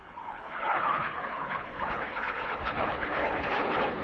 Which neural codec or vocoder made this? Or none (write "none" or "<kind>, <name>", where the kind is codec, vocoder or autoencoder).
codec, HILCodec